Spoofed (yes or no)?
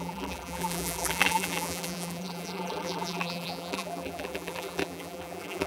yes